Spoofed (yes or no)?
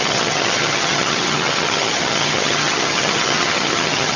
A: yes